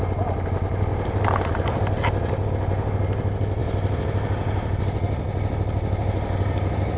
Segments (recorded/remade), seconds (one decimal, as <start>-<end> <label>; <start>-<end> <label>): 0.0-7.0 recorded